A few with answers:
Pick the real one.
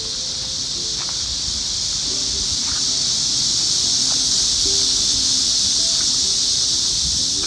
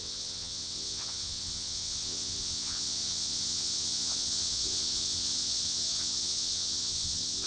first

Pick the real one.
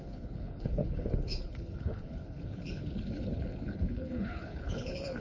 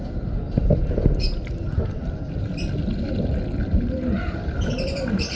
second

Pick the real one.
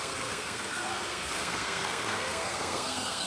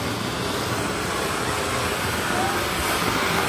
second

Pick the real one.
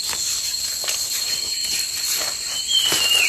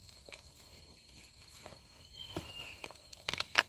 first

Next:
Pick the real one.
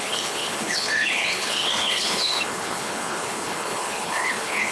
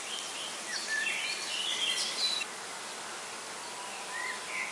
second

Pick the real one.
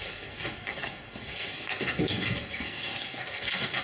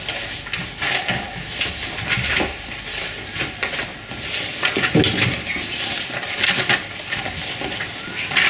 second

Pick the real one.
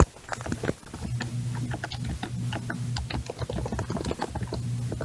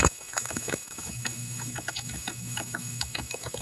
first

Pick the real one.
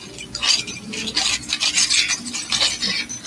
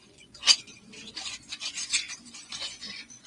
first